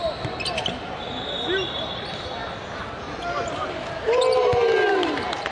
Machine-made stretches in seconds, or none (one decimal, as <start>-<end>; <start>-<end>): none